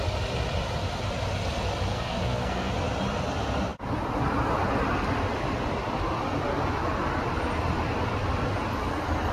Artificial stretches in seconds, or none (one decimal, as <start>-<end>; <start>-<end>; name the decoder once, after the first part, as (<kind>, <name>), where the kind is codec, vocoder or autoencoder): 1.9-2.7 (codec, SNAC)